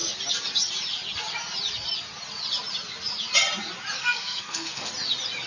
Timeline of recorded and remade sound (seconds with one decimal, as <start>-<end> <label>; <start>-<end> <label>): 0.0-4.0 recorded; 4.0-4.9 remade; 4.9-5.5 recorded

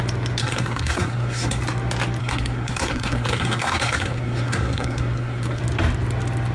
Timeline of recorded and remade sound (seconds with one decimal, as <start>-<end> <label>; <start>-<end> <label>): 0.0-0.4 recorded; 0.4-1.6 remade; 1.6-2.2 recorded; 2.2-5.6 remade; 5.6-6.5 recorded

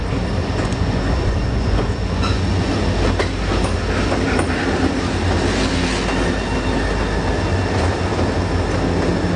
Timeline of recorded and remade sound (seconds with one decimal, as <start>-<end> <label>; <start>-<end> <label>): 0.0-0.4 recorded; 0.4-2.7 remade; 2.7-9.4 recorded

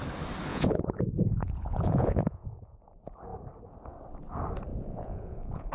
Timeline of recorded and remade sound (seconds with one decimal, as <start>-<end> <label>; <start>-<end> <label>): 0.0-0.5 recorded; 0.5-2.8 remade; 2.8-4.7 recorded; 4.7-5.7 remade